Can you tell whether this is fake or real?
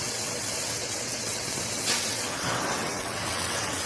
fake